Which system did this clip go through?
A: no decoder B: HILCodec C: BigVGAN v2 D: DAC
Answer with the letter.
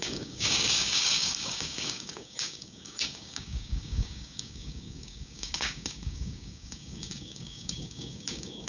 D